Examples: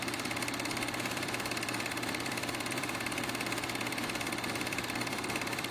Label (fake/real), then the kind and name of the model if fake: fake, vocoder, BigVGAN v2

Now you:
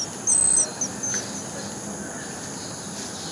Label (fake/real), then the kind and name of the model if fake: real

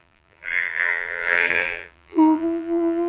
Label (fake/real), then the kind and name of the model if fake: fake, vocoder, BigVGAN v2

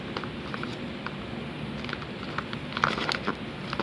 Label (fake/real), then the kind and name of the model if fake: real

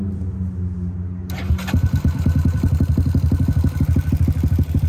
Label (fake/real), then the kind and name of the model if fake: real